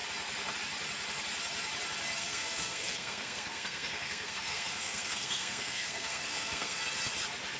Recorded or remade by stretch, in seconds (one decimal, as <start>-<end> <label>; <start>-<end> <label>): 0.0-2.2 recorded; 2.2-6.8 remade; 6.8-7.6 recorded